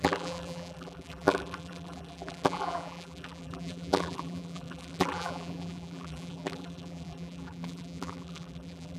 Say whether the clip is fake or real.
fake